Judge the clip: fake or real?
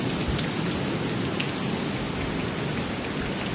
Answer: real